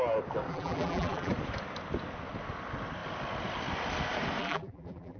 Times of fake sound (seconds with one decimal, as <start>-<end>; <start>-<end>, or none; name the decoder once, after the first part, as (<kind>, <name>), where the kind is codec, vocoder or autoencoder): 0.5-1.3 (vocoder, BigVGAN v2); 4.4-5.2